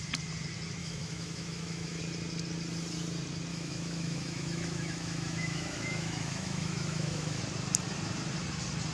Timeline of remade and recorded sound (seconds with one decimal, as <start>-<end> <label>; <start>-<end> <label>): 0.0-0.8 recorded; 0.8-2.0 remade; 2.0-3.5 recorded; 3.5-7.4 remade; 7.4-8.9 recorded